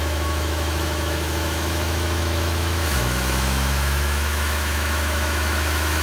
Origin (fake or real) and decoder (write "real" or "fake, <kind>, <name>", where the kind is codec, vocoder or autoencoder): fake, autoencoder, DAC-VAE